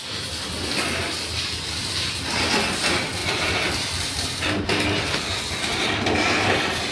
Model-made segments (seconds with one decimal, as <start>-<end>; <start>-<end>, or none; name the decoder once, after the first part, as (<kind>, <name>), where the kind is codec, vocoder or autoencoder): none

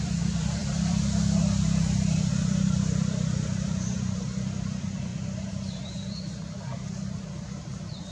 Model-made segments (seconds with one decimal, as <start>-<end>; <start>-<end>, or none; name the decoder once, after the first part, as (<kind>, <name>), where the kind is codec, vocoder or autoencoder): 0.0-8.1 (vocoder, BigVGAN v2)

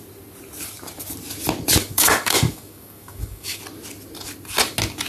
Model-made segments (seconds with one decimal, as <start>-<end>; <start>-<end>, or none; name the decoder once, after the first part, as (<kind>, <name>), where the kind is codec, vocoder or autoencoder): 1.8-3.6 (codec, DAC)

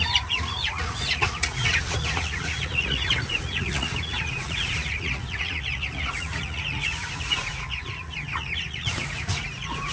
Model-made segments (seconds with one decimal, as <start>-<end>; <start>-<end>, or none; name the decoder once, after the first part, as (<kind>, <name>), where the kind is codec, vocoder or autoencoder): 0.0-9.9 (vocoder, Vocos)

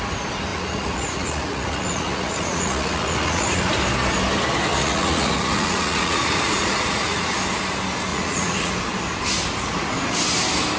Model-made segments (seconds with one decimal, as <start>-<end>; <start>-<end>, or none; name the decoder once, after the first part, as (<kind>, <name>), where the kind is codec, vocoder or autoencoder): 0.5-3.7 (vocoder, Vocos); 4.8-7.3; 8.1-8.7